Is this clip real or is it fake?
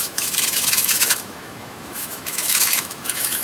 fake